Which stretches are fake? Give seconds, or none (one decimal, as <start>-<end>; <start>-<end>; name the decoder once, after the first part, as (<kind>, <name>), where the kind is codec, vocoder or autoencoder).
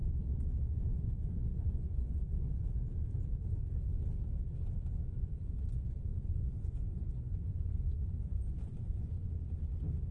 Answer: 0.9-2.5 (vocoder, Vocos); 4.9-5.4; 6.1-9.3